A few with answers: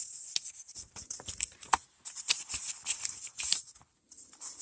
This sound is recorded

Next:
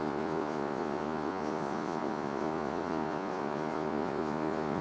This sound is remade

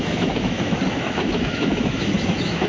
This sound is remade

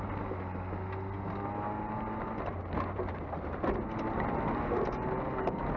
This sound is recorded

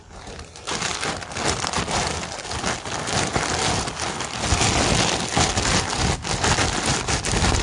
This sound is recorded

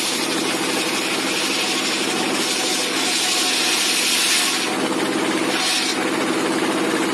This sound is recorded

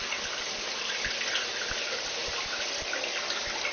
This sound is recorded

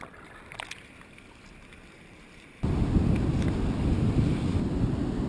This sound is recorded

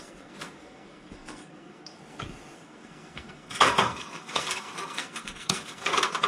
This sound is remade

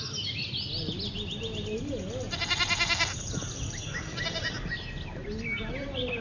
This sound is recorded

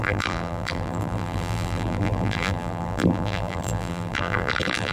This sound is remade